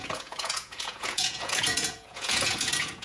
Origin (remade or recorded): remade